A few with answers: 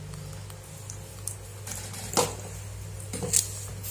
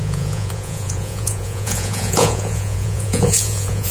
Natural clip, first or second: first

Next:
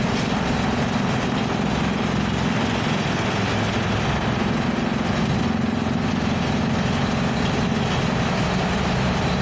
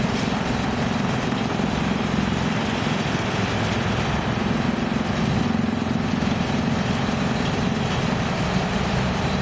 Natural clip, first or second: first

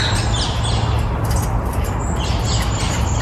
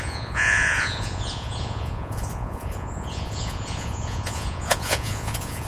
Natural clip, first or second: first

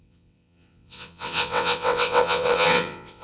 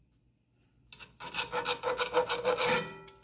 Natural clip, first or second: second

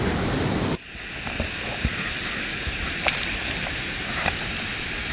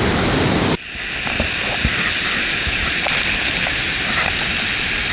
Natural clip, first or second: first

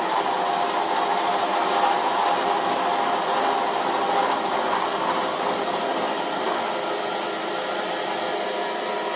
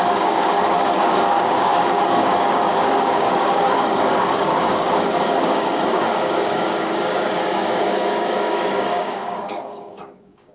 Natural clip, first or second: first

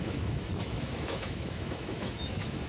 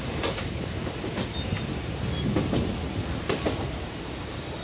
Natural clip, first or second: second